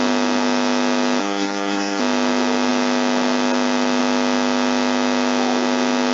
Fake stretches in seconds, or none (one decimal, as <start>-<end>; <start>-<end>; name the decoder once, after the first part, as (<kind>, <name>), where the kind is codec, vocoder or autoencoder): 1.2-2.0 (codec, SNAC)